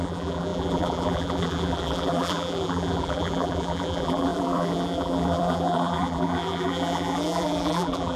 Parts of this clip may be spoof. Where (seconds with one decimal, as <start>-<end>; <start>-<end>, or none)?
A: 0.0-8.2